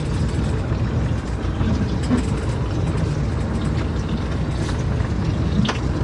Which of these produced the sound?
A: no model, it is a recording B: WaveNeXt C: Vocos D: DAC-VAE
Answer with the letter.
A